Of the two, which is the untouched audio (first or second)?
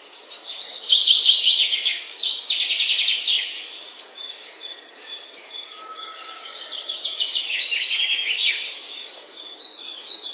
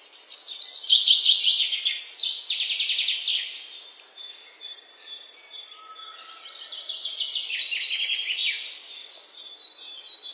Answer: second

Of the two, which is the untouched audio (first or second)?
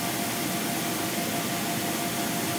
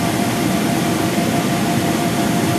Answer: first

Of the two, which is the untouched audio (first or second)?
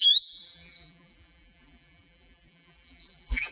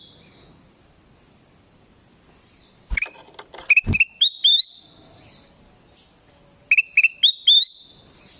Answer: second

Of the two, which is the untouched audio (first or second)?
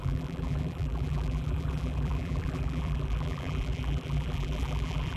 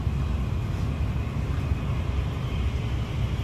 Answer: second